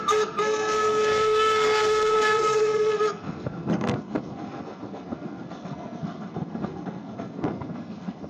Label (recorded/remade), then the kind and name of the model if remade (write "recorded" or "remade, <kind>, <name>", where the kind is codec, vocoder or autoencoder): remade, codec, SNAC